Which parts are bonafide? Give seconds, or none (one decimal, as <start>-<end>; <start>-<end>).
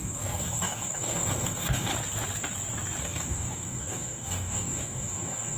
1.9-3.0